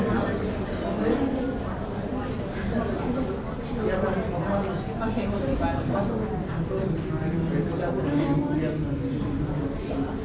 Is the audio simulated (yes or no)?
no